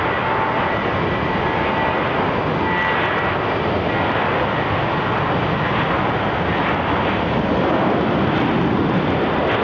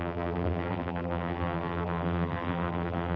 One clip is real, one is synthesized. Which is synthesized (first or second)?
second